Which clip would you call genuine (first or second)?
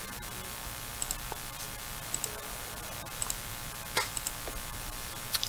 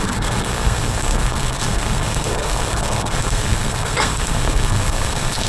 first